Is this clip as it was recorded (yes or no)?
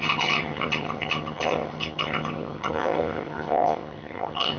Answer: no